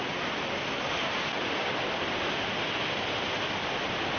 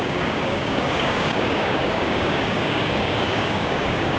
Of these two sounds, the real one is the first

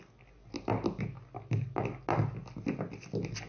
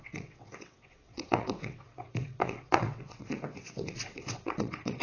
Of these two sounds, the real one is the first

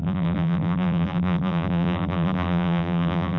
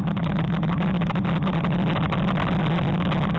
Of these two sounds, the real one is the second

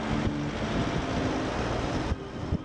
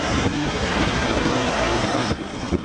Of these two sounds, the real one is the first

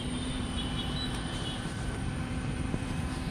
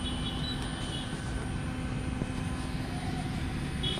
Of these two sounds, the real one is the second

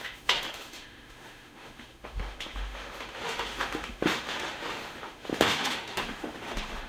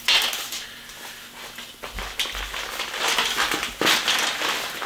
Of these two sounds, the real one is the second